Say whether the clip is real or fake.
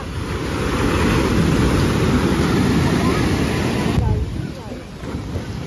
real